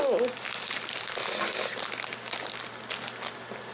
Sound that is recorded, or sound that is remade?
recorded